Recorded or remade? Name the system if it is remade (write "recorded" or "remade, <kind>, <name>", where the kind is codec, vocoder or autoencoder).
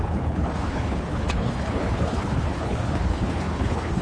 remade, codec, HILCodec